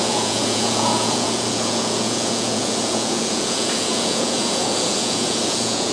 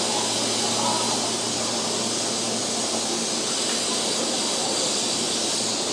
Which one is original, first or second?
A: second